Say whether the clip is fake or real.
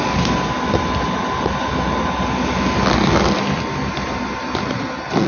real